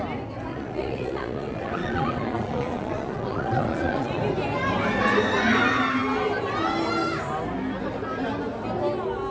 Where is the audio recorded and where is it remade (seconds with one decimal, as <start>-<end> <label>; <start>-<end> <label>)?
0.0-0.5 recorded; 0.5-4.2 remade; 4.2-9.3 recorded